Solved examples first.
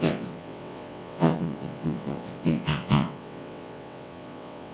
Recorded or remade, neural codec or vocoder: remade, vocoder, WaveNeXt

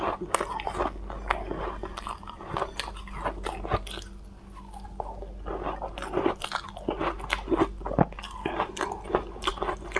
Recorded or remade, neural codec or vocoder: recorded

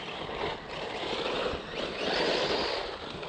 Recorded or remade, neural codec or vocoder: recorded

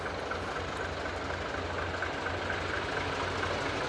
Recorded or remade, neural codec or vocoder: recorded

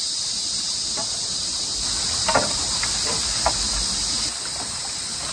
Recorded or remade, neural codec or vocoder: recorded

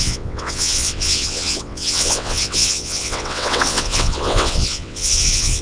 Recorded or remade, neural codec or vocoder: remade, vocoder, WaveNeXt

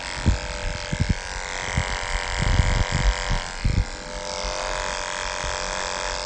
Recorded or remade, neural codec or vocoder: recorded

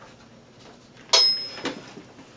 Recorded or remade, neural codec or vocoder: recorded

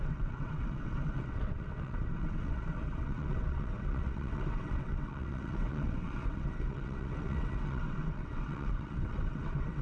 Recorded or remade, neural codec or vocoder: remade, vocoder, WaveNeXt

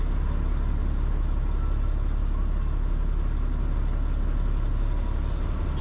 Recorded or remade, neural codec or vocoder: recorded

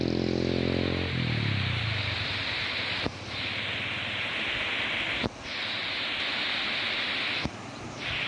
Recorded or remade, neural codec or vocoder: recorded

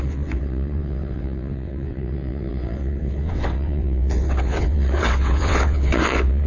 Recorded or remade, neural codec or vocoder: remade, vocoder, WaveNeXt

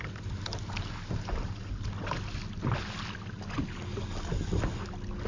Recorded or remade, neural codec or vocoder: recorded